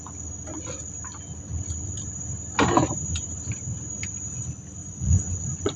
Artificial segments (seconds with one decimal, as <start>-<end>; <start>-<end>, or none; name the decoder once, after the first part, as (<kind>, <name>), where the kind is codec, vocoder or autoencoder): 4.8-5.8 (vocoder, Vocos)